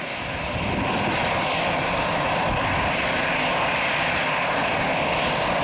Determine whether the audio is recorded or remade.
recorded